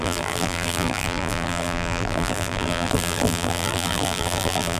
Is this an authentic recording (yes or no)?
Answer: no